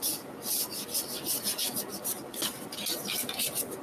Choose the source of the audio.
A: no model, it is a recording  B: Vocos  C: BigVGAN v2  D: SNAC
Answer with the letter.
A